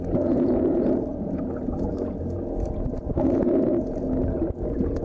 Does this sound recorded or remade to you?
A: remade